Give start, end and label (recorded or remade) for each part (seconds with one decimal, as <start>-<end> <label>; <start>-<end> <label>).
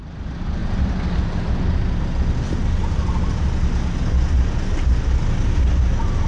0.0-0.6 recorded; 0.6-1.2 remade; 1.2-6.3 recorded